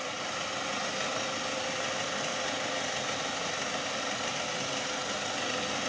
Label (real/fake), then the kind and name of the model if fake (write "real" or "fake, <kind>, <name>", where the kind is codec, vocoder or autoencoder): real